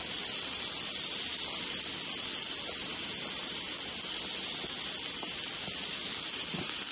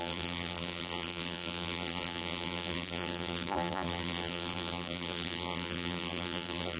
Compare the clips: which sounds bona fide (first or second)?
first